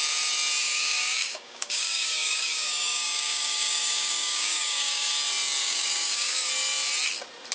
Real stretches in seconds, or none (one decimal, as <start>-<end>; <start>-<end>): 0.0-0.6; 5.1-5.6; 6.5-7.5